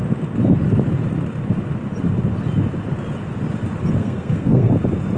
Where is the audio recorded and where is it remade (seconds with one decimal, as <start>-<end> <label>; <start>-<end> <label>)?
0.0-4.0 recorded; 4.0-4.7 remade; 4.7-5.2 recorded

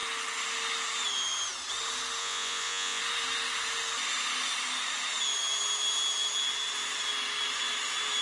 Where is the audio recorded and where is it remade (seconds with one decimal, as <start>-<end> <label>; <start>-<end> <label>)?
0.0-2.2 recorded; 2.2-3.0 remade; 3.0-8.2 recorded

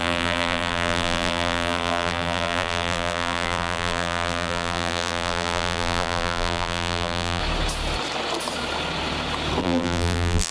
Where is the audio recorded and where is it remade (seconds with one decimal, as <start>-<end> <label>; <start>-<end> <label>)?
0.0-7.4 remade; 7.4-9.6 recorded; 9.6-10.5 remade

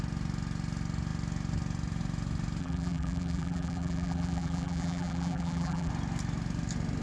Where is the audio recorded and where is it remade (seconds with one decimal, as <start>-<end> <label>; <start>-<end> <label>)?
0.0-2.6 recorded; 2.6-5.9 remade; 5.9-7.0 recorded

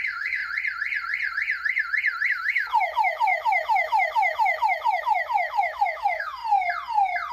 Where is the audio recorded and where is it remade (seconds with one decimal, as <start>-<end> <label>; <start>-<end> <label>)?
0.0-0.4 remade; 0.4-2.3 recorded; 2.3-6.4 remade; 6.4-7.3 recorded